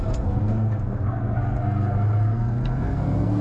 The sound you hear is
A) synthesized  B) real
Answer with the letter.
A